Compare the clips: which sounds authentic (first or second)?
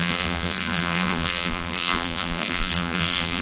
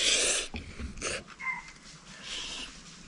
second